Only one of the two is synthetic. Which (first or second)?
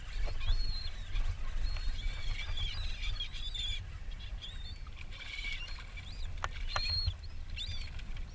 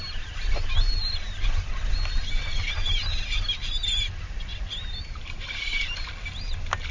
first